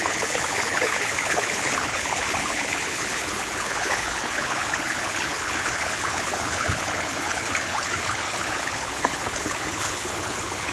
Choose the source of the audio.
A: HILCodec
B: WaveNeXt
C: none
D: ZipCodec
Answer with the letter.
A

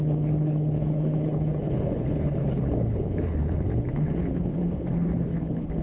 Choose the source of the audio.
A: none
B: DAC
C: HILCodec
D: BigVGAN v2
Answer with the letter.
C